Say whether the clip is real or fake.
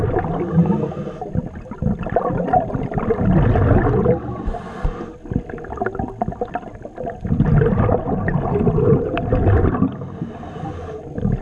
real